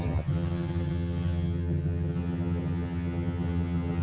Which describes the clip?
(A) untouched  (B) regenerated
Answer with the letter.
B